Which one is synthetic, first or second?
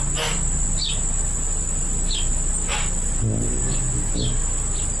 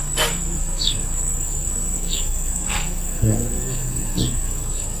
second